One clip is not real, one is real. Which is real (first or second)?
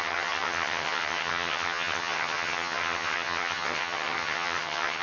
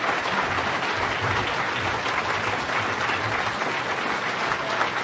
second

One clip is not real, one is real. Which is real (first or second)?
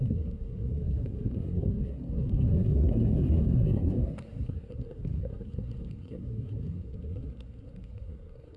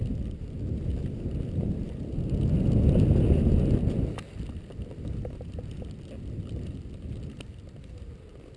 second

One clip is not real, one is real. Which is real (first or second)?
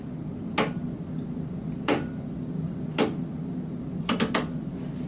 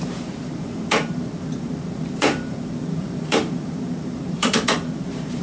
first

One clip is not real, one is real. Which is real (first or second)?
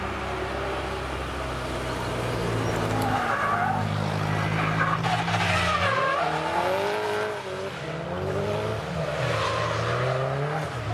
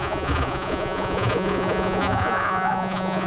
first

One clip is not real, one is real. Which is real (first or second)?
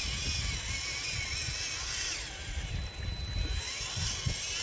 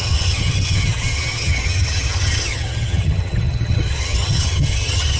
first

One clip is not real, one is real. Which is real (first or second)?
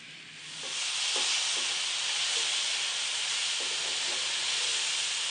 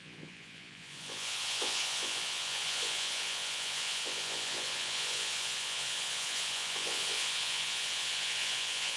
first